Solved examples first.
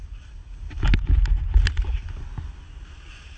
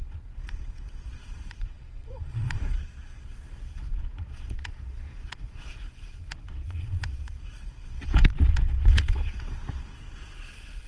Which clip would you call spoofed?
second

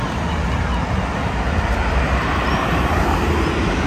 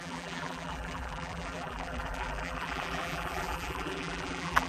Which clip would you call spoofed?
second